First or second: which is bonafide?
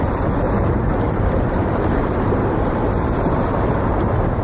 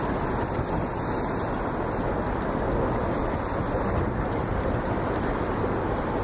second